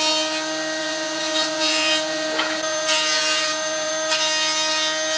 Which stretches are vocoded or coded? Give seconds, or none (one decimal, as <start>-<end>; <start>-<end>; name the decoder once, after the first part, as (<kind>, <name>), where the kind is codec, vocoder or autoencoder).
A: 0.8-3.9 (vocoder, Vocos)